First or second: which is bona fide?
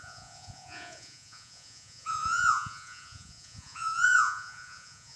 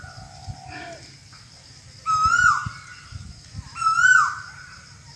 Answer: second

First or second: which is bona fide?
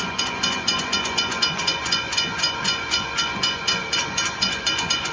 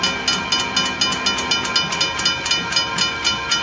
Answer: second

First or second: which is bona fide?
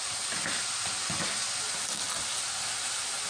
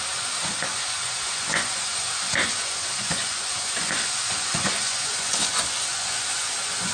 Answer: first